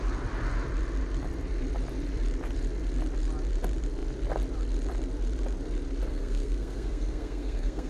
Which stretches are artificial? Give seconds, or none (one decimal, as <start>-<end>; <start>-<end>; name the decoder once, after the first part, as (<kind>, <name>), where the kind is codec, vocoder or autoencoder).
6.1-7.9 (codec, SNAC)